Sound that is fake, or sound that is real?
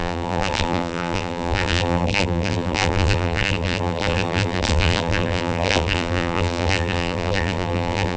fake